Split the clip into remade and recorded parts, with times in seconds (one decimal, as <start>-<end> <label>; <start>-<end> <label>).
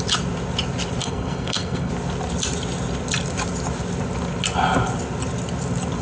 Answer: 0.0-1.0 recorded; 1.0-1.9 remade; 1.9-6.0 recorded